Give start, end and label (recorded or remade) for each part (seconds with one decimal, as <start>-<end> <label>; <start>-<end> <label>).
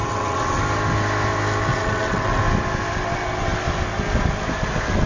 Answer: 0.0-0.6 remade; 0.6-1.7 recorded; 1.7-2.4 remade; 2.4-5.1 recorded